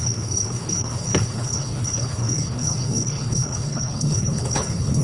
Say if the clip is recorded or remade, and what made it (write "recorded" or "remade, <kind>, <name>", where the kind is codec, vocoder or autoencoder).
remade, codec, HILCodec